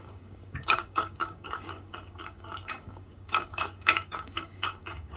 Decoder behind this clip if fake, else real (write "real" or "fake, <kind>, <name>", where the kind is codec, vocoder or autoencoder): fake, codec, DAC